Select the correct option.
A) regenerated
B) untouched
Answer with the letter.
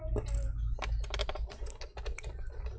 B